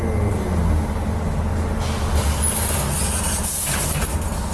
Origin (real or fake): real